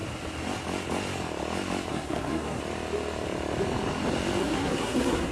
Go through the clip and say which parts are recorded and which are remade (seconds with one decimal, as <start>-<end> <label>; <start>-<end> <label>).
0.0-1.9 recorded; 1.9-2.6 remade; 2.6-4.4 recorded; 4.4-5.3 remade